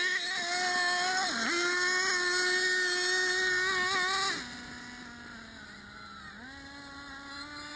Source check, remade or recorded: recorded